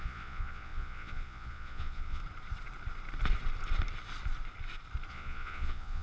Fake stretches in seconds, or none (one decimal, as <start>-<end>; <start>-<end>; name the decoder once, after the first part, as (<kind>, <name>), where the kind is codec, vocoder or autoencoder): 0.0-2.2 (vocoder, Vocos); 5.1-6.0